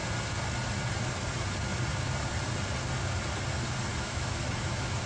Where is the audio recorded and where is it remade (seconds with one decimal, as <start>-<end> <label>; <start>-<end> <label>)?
0.0-3.9 recorded; 3.9-5.1 remade